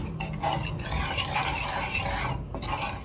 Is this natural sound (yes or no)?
yes